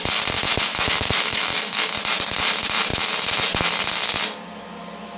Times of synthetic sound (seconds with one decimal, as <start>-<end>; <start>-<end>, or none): 0.7-1.9